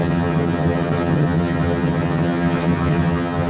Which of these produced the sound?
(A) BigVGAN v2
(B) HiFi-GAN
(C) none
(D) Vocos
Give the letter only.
B